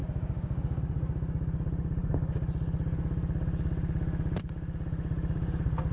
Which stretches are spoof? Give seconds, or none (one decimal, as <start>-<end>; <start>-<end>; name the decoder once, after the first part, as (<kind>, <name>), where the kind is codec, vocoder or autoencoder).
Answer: 0.0-0.8 (codec, DAC)